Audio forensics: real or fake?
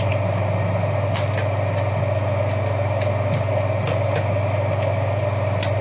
real